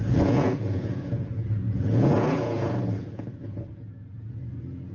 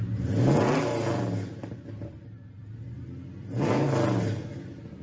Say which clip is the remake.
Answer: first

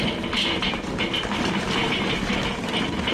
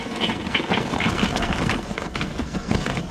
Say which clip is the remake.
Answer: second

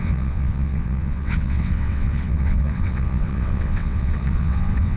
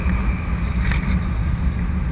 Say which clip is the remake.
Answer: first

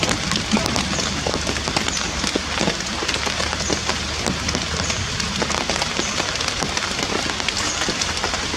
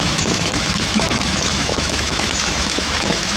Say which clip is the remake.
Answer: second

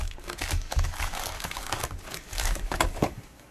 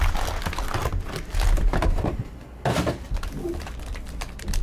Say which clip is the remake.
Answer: first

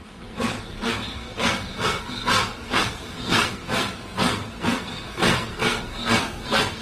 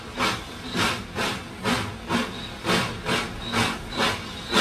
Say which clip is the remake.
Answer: first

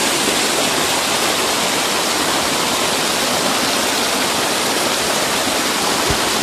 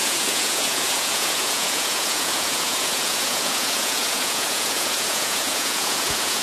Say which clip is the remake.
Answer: second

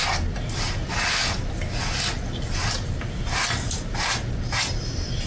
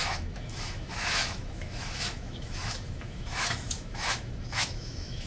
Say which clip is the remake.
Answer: second